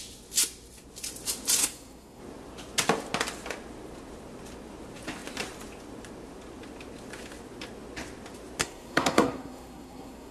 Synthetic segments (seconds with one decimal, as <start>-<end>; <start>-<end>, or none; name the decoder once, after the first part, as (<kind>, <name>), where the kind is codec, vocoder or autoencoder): 1.6-2.2 (codec, SNAC); 8.6-10.3